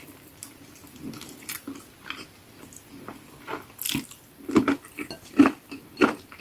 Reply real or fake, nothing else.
fake